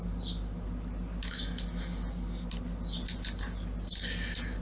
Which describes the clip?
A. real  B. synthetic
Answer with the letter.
A